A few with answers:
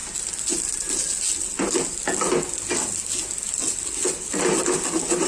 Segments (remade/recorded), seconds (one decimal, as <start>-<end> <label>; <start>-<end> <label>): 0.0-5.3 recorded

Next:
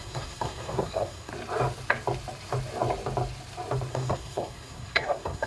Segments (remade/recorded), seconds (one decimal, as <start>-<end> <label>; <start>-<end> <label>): 0.0-1.3 remade; 1.3-3.9 recorded; 3.9-5.5 remade

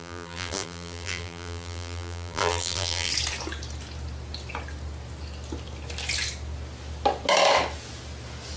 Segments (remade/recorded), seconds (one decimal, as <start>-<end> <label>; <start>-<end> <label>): 0.0-3.1 remade; 3.1-8.6 recorded